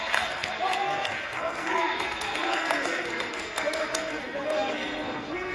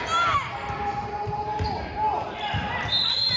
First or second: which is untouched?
second